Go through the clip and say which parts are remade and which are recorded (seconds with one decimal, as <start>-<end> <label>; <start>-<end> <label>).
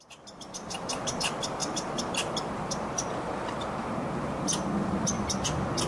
0.0-5.9 recorded